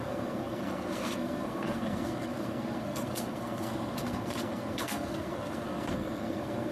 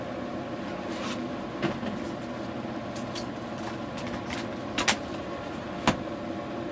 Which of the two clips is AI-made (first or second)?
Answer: first